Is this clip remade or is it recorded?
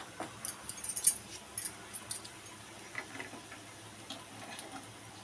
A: recorded